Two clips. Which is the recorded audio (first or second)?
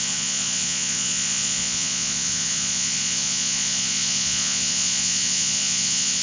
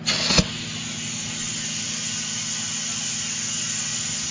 second